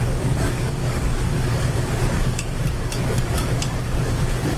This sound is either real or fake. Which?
fake